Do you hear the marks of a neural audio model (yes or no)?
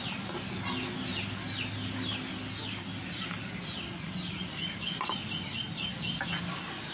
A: no